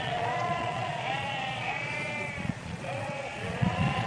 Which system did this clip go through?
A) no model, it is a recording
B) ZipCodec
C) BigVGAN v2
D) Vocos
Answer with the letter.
D